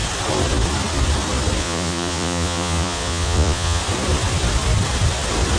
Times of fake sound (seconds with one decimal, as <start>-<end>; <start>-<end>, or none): 1.6-3.8